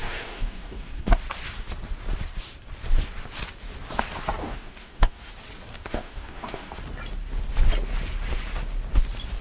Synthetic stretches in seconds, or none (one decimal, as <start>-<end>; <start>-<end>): 0.0-1.1; 4.4-5.3; 5.7-6.7